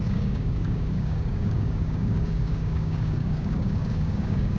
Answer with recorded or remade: remade